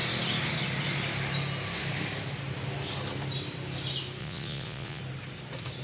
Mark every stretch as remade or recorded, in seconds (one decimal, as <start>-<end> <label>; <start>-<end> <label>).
0.0-4.2 recorded; 4.2-5.0 remade; 5.0-5.8 recorded